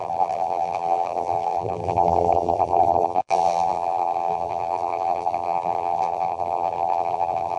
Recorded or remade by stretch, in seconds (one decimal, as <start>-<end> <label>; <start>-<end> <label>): 0.0-7.6 remade